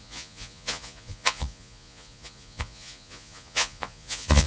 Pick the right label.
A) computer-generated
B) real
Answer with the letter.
A